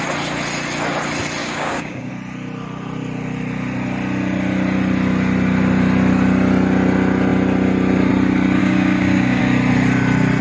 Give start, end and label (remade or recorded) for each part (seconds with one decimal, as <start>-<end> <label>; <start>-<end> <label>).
0.0-1.4 recorded; 1.4-2.1 remade; 2.1-8.6 recorded; 8.6-9.4 remade; 9.4-10.4 recorded